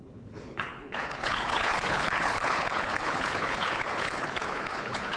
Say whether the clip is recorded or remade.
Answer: remade